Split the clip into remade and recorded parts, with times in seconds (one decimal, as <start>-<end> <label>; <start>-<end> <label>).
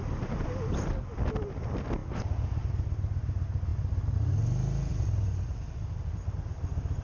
0.0-7.0 recorded